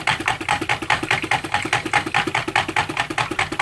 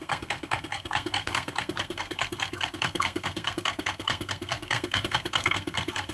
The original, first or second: first